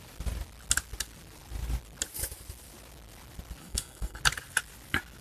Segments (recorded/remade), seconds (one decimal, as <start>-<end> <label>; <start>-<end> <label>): 0.0-3.6 recorded; 3.6-4.2 remade; 4.2-5.2 recorded